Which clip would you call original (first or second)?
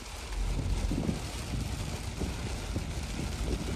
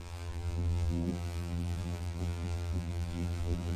first